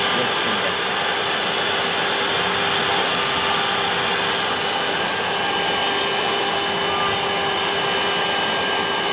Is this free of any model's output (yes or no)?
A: yes